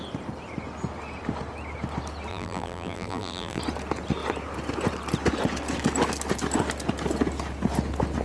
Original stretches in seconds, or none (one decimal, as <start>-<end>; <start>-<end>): 0.0-2.3; 3.6-8.2